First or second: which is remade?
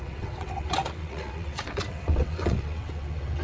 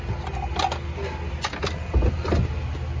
first